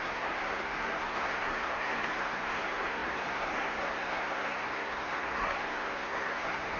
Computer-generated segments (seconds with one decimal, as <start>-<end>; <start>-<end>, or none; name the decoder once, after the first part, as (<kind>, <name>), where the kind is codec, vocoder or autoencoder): 0.0-6.8 (codec, SNAC)